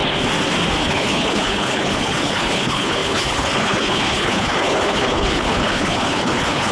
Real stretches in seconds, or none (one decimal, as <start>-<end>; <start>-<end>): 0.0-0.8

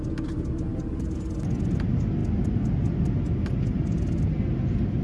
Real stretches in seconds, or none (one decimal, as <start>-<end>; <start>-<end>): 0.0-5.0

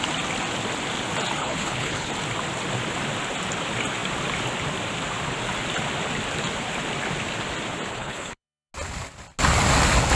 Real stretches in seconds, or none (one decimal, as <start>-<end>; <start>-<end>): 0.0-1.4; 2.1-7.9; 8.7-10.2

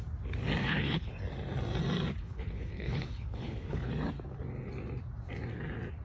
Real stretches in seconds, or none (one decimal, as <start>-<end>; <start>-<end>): 0.0-0.6; 1.1-2.2; 3.9-6.0

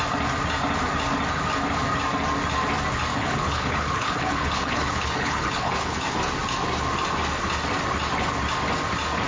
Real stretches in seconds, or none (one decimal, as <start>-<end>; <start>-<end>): 0.0-3.1; 6.2-9.3